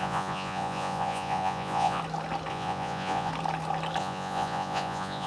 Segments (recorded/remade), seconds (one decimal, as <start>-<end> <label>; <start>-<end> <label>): 0.0-2.0 remade; 2.0-2.5 recorded; 2.5-3.3 remade; 3.3-4.0 recorded; 4.0-5.3 remade